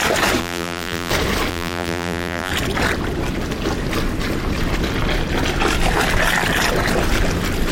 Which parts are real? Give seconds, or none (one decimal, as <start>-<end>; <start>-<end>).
0.0-0.4; 1.1-1.5; 2.5-7.7